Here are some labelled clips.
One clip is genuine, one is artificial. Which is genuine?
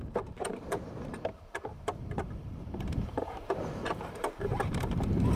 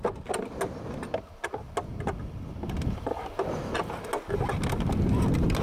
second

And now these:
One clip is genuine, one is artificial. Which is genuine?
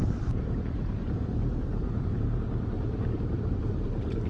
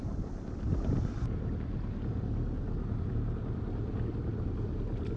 second